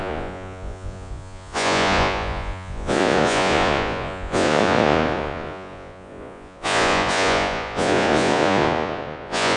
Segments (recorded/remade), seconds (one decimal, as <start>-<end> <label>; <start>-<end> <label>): 0.0-9.6 remade